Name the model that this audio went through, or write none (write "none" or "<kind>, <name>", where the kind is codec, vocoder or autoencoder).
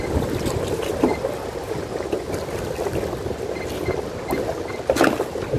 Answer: none